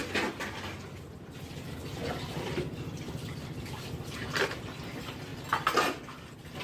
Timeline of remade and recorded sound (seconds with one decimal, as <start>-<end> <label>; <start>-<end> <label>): 0.0-5.3 remade; 5.3-6.6 recorded

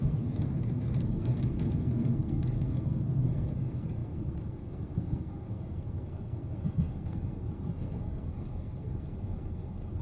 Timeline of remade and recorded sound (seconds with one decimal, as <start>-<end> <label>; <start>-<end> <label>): 0.0-10.0 remade

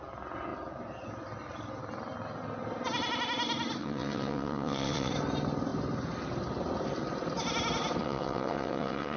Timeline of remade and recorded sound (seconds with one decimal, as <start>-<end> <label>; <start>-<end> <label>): 0.0-3.8 recorded; 3.8-5.1 remade; 5.1-8.0 recorded; 8.0-9.2 remade

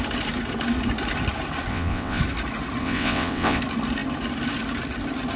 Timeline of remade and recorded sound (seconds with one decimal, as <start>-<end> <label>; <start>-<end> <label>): 0.0-1.7 recorded; 1.7-2.2 remade; 2.2-2.8 recorded; 2.8-3.6 remade; 3.6-5.4 recorded

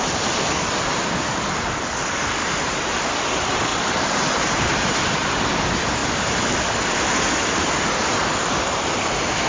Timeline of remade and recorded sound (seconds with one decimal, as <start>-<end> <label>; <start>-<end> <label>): 0.0-2.4 recorded; 2.4-3.1 remade; 3.1-3.7 recorded; 3.7-5.5 remade; 5.5-9.5 recorded

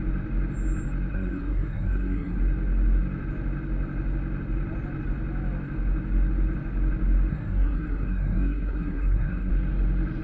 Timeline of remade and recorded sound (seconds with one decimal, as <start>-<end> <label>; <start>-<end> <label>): 0.0-1.1 recorded; 1.1-2.4 remade; 2.4-7.3 recorded; 7.3-9.5 remade; 9.5-10.2 recorded

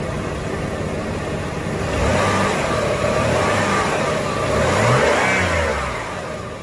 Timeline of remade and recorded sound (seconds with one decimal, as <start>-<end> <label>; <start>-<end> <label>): 0.0-2.1 recorded; 2.1-4.1 remade; 4.1-5.7 recorded; 5.7-6.6 remade

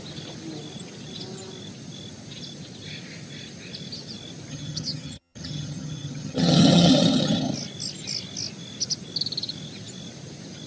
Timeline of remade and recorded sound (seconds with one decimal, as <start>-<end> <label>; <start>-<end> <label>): 0.0-4.5 recorded; 4.5-7.5 remade; 7.5-10.7 recorded